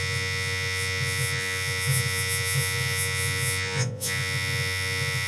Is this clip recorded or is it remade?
remade